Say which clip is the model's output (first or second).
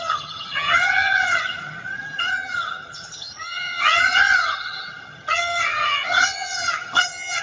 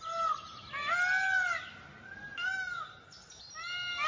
first